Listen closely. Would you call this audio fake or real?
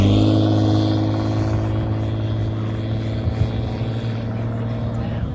real